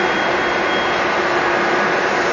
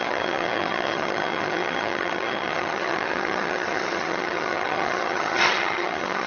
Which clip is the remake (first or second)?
second